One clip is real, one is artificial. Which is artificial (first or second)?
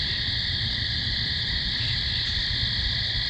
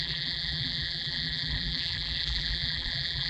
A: second